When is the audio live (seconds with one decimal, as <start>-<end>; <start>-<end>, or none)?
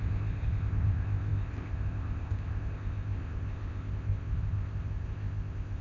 none